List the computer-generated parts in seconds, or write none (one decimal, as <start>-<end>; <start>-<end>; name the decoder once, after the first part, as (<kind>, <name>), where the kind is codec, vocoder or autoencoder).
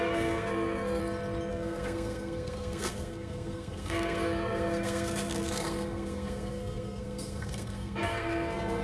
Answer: 0.0-1.0 (codec, SNAC); 1.5-8.8